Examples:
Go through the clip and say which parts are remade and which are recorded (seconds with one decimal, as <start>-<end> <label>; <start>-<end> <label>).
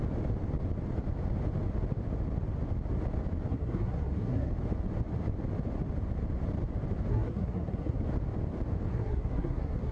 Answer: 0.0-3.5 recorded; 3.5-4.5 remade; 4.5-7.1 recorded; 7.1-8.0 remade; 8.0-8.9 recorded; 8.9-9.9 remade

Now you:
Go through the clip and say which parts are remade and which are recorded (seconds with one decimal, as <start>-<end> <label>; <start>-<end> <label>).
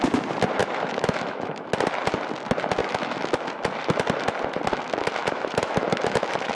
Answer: 0.0-0.6 recorded; 0.6-1.7 remade; 1.7-2.8 recorded; 2.8-3.3 remade; 3.3-5.2 recorded; 5.2-6.5 remade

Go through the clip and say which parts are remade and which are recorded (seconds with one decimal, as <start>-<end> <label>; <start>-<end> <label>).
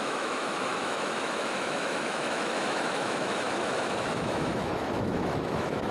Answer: 0.0-5.9 remade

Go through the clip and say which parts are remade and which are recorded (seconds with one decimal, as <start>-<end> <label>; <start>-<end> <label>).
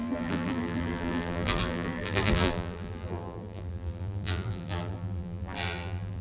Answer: 0.0-6.2 remade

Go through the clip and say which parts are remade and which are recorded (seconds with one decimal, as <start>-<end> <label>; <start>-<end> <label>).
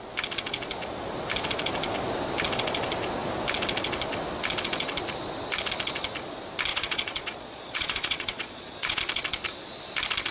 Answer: 0.0-6.7 recorded; 6.7-9.0 remade; 9.0-10.3 recorded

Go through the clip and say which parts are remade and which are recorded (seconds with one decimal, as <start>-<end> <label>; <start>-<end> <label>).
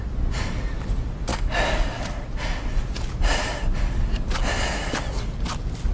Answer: 0.0-1.3 recorded; 1.3-2.0 remade; 2.0-5.9 recorded